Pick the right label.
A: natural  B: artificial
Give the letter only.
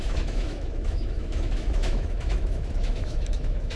B